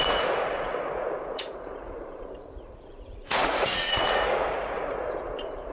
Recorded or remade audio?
remade